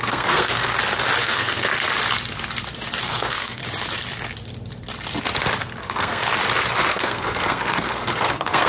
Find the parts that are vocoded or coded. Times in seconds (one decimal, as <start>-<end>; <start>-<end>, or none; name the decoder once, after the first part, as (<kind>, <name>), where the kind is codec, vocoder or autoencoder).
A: 0.0-0.7 (codec, SNAC); 1.2-1.7; 3.0-3.6; 5.8-6.2; 6.9-8.7